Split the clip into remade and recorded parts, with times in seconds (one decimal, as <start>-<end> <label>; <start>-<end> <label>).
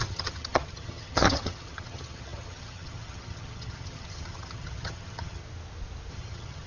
0.0-5.4 remade; 5.4-6.1 recorded; 6.1-6.7 remade